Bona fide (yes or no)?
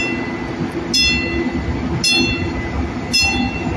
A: yes